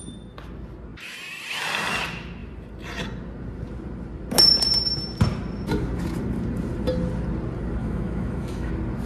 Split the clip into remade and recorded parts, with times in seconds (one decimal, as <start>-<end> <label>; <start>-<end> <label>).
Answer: 0.0-7.8 recorded; 7.8-8.7 remade; 8.7-9.1 recorded